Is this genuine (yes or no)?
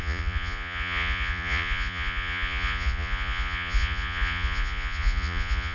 no